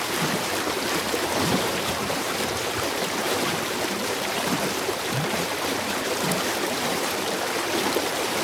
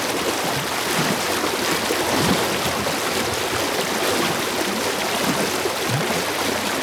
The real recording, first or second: second